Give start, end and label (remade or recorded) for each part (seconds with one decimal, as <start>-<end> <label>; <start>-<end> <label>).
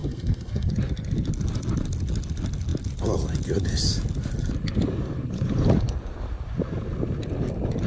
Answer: 0.0-0.7 remade; 0.7-7.9 recorded